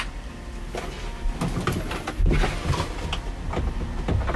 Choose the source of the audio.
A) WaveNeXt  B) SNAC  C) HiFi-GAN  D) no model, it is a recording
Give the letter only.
D